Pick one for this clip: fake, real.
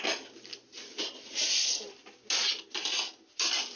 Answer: real